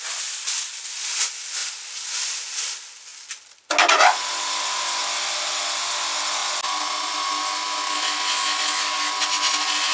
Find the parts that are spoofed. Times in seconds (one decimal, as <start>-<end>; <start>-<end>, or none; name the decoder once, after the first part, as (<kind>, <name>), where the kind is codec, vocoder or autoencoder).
none